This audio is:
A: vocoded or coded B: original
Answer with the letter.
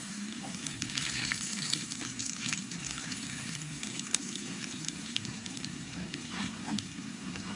A